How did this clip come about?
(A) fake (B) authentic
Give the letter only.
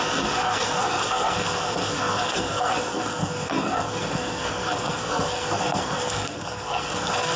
A